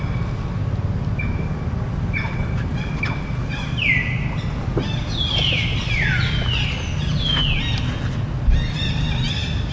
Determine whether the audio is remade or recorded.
recorded